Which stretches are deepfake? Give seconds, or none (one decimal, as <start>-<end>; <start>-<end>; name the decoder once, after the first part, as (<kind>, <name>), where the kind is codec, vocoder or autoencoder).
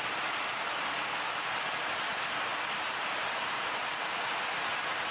none